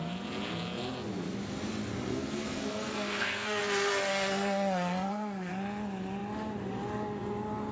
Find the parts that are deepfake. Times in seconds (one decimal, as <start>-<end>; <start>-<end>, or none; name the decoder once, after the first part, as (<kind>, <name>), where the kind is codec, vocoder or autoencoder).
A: 2.1-3.6 (codec, SNAC); 4.1-5.5